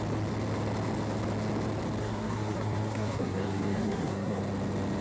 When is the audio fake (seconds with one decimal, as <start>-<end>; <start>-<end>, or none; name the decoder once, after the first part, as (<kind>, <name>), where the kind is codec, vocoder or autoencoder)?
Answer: 2.0-4.4 (codec, SNAC)